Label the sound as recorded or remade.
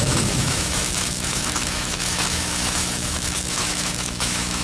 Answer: remade